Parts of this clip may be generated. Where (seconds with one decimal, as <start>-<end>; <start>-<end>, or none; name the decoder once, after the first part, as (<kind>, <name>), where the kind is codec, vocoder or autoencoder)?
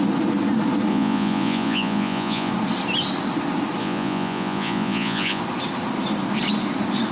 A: 0.9-2.5 (vocoder, Vocos); 3.8-5.4